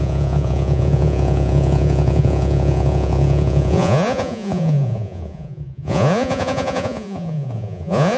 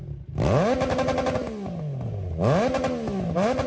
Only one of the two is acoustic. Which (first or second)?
second